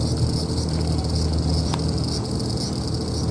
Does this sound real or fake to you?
real